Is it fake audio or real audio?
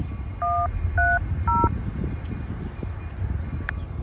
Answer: real